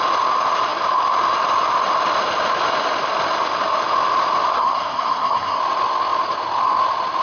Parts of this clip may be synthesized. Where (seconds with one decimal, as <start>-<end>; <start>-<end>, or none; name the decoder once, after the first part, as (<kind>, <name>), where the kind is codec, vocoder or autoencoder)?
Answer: 4.5-5.6 (codec, SNAC)